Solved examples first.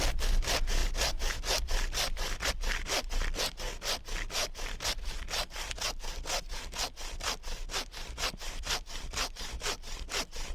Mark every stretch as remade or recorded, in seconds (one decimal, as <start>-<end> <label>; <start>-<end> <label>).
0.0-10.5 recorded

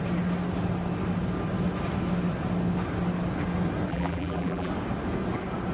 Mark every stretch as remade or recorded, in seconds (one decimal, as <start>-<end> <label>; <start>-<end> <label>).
0.0-3.9 recorded; 3.9-4.7 remade; 4.7-5.7 recorded

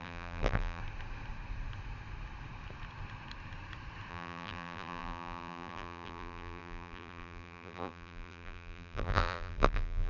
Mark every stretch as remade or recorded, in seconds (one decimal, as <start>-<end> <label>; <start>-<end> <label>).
0.0-0.8 remade; 0.8-4.1 recorded; 4.1-10.1 remade